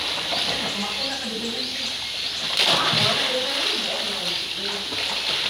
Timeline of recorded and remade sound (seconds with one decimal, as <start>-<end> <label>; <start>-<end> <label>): 0.0-1.7 recorded; 1.7-2.3 remade; 2.3-5.5 recorded